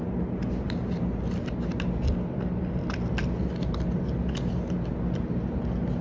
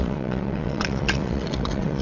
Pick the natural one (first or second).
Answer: first